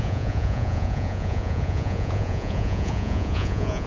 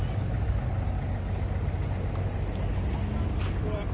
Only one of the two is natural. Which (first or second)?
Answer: second